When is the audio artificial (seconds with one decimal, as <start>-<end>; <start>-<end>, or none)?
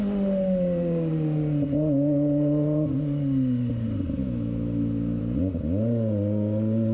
4.2-5.2